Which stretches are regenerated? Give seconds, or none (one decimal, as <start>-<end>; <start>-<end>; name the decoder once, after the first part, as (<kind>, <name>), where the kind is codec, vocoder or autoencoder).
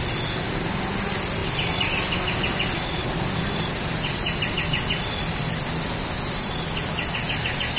none